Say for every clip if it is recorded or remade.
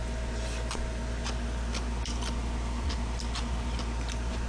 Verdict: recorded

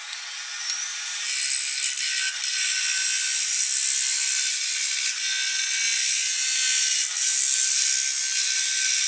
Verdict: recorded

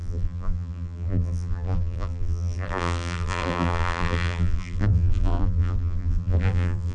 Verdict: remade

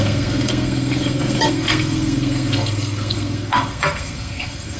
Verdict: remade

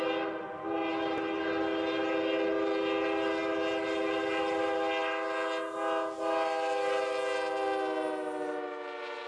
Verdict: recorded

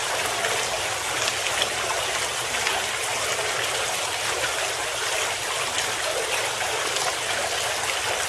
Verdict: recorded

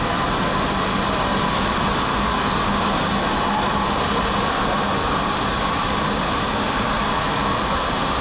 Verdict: recorded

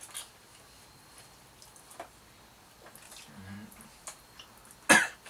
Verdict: recorded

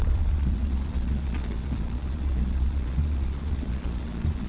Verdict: remade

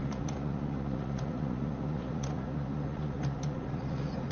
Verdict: remade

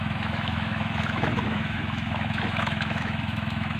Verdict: remade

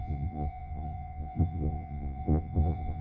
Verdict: remade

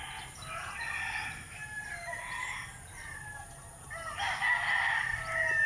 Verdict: recorded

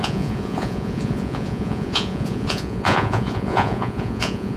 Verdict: remade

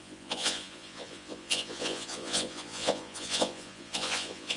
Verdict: remade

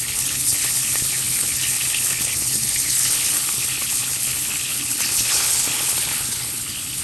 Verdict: remade